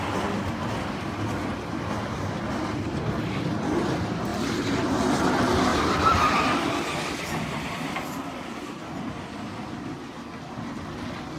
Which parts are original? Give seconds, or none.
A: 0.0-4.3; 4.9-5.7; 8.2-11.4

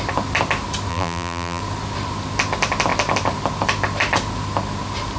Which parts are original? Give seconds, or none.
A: 0.0-0.9; 1.6-5.2

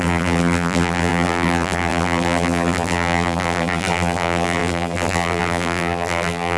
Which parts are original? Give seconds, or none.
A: none

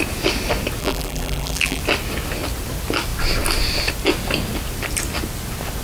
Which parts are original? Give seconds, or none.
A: 0.0-0.8; 1.8-5.8

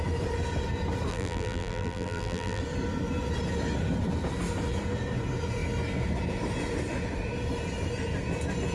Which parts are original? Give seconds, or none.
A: 0.0-1.1; 2.6-8.7

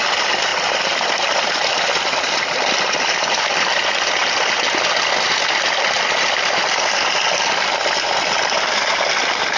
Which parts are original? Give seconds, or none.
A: 0.0-9.6

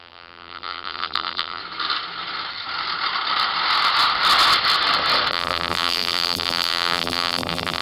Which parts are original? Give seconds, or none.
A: 1.6-5.3